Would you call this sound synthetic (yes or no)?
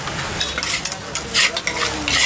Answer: no